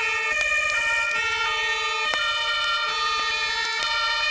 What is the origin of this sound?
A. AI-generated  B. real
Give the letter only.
B